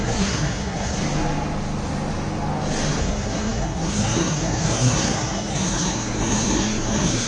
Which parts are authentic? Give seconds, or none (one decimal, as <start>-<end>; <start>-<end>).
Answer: 1.0-3.0

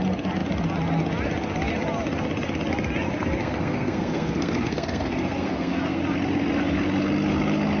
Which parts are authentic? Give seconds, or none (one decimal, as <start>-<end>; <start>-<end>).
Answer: 0.0-3.4; 6.0-7.8